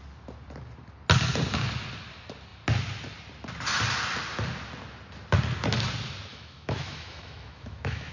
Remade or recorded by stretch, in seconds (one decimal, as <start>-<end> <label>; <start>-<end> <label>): 0.0-6.3 recorded; 6.3-8.1 remade